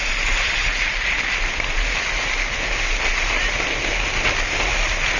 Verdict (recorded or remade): recorded